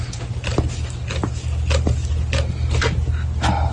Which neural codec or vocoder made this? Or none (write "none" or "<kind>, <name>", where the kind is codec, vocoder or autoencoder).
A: none